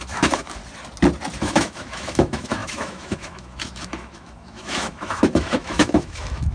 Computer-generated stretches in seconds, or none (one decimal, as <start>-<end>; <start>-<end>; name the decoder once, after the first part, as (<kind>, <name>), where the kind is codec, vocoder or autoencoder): 0.0-0.6 (autoencoder, DAC-VAE); 1.4-6.5